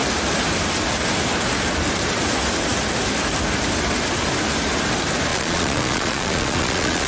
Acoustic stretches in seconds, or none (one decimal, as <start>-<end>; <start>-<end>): 0.0-5.3